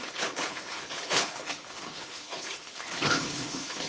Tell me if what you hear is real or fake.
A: fake